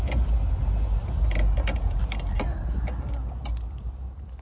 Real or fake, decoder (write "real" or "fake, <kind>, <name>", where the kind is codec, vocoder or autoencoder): real